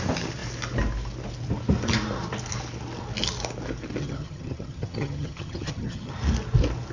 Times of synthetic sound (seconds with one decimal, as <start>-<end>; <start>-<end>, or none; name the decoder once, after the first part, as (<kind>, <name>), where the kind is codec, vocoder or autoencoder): 4.0-6.1 (vocoder, HiFi-GAN)